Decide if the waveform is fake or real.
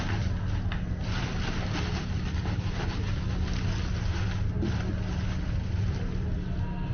real